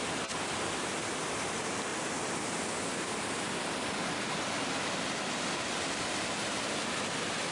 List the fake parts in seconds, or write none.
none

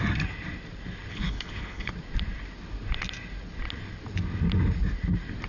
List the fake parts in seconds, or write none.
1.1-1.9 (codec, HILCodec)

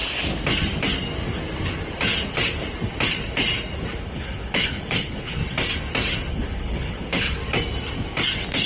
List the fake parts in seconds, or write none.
4.0-5.4 (codec, HILCodec); 6.3-7.4

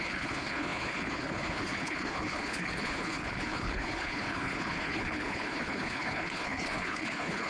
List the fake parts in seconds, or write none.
0.0-7.5 (codec, HILCodec)

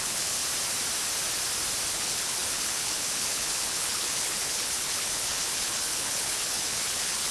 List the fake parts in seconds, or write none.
0.0-0.4 (codec, HILCodec); 1.9-7.3

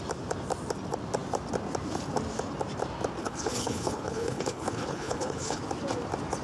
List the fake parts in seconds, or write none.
3.2-5.6 (codec, HILCodec)